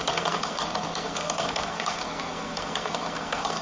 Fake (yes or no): yes